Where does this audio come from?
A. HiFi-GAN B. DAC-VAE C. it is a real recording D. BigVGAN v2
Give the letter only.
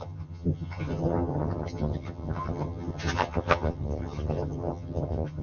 A